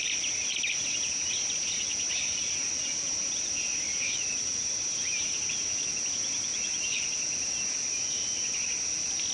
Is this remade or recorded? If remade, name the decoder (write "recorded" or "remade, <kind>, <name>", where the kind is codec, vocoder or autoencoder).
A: recorded